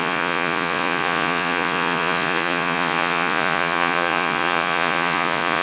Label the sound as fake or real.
fake